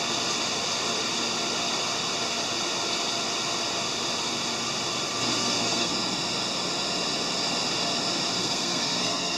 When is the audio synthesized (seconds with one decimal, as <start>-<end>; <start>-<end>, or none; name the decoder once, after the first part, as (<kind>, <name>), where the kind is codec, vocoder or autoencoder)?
5.4-5.9 (codec, SNAC); 8.4-9.4

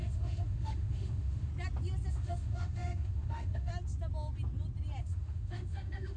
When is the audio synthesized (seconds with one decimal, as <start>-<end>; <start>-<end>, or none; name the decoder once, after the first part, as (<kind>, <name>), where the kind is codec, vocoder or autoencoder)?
0.0-1.5 (autoencoder, DAC-VAE); 2.1-3.7; 5.0-6.2